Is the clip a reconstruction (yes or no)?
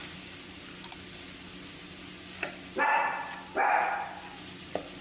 no